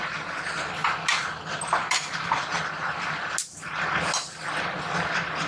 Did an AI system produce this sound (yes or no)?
no